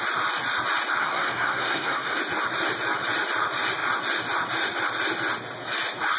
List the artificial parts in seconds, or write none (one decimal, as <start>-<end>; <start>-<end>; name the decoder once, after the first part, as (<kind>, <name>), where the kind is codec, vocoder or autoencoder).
1.0-2.2 (codec, SNAC)